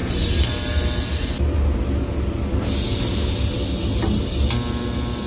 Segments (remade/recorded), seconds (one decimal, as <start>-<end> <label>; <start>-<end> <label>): 0.0-5.3 recorded